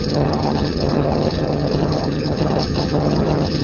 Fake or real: fake